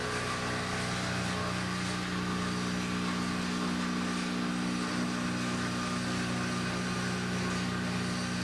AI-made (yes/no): no